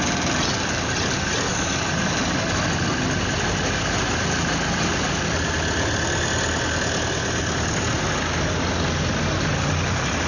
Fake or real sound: real